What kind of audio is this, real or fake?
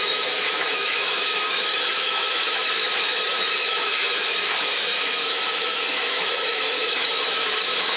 fake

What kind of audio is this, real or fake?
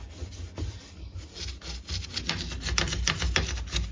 real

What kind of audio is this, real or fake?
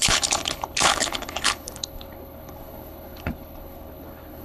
fake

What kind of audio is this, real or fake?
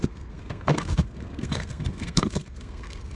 fake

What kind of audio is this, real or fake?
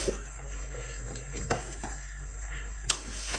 fake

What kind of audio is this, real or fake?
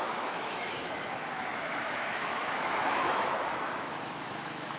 fake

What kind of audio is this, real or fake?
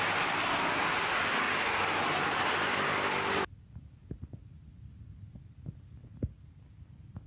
real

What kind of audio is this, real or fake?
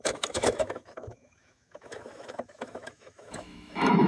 fake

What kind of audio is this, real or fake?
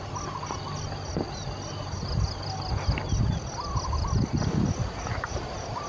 real